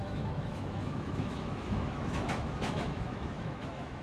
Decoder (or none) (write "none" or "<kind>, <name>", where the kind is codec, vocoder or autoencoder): autoencoder, DAC-VAE